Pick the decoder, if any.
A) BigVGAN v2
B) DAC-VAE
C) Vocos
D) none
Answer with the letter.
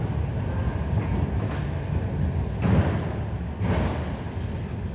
D